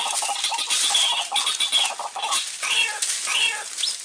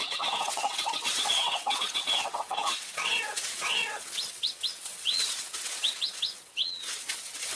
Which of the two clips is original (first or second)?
first